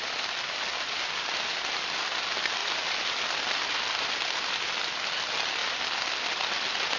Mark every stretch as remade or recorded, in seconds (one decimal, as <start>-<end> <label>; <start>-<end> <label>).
0.0-7.0 recorded